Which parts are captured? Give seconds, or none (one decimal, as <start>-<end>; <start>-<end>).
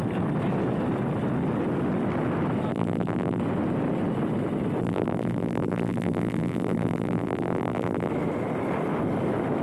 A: 0.0-2.7; 3.4-4.8; 8.1-9.6